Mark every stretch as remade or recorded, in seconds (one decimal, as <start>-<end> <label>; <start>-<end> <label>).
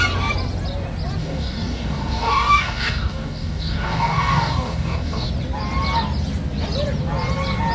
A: 0.0-1.2 recorded; 1.2-5.3 remade; 5.3-7.7 recorded